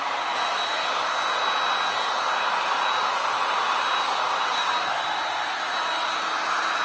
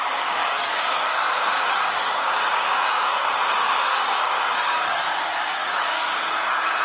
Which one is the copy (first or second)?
second